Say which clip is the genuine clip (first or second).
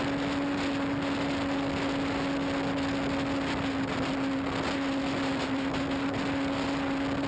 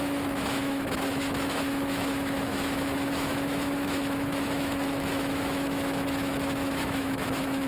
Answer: first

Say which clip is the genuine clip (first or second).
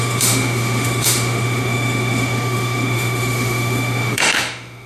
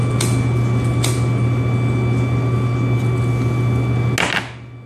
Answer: second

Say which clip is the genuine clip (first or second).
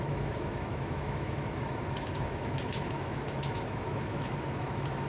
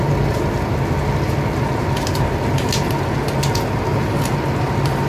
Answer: second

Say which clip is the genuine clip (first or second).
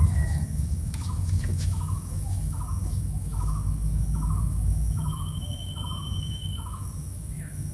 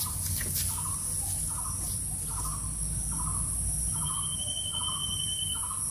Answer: second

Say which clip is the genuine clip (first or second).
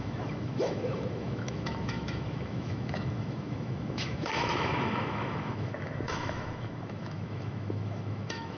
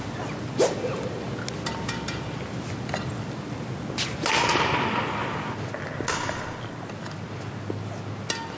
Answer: second